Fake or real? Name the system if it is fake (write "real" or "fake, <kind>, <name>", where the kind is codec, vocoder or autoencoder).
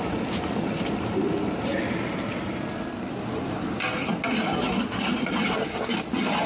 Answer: real